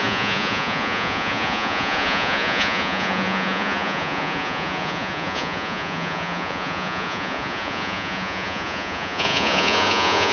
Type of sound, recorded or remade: remade